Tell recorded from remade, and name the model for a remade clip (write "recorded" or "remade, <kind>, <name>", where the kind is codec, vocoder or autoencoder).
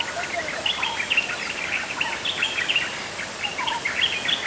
recorded